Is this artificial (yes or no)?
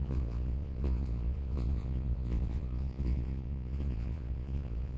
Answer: yes